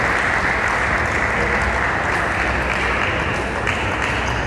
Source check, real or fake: real